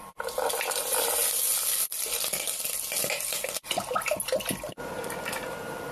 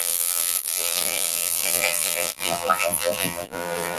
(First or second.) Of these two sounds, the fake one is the second